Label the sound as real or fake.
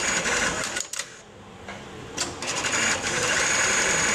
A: real